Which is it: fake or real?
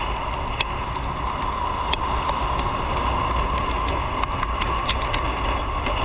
real